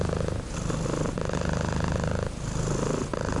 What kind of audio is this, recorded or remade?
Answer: recorded